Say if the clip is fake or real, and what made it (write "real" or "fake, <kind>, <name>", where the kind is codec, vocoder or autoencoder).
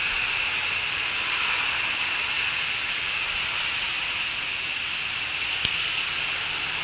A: real